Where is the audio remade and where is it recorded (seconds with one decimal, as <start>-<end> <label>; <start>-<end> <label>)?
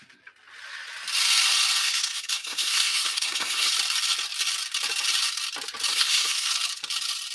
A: 0.0-1.8 recorded; 1.8-3.7 remade; 3.7-5.9 recorded; 5.9-6.5 remade; 6.5-7.3 recorded